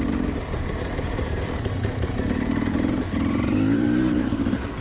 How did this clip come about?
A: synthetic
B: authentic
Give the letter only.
A